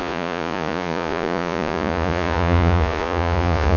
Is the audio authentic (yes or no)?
no